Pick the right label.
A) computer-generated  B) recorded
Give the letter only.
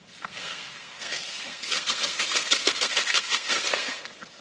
A